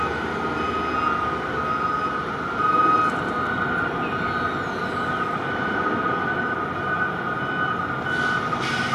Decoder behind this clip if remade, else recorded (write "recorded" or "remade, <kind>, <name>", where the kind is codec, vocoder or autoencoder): recorded